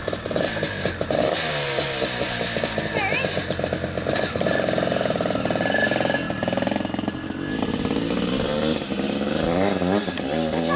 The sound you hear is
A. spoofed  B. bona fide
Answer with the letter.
B